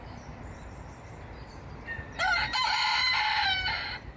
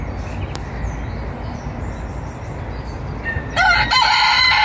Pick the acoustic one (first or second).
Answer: second